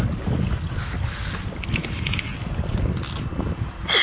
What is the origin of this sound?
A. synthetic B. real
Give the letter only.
B